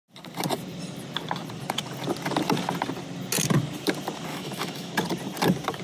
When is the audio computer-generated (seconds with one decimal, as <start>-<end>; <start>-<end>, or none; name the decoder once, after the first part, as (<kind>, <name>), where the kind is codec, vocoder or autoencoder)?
4.3-4.9 (autoencoder, DAC-VAE)